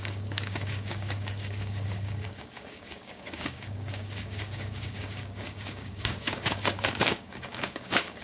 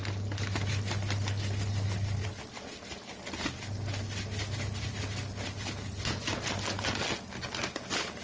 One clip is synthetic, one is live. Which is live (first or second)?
second